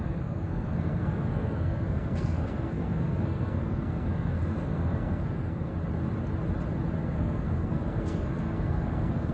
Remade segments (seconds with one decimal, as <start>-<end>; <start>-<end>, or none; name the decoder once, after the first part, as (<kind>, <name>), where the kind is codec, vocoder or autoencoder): 0.0-5.7 (codec, SNAC); 7.0-9.3